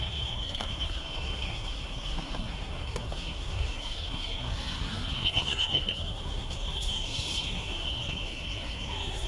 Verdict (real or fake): fake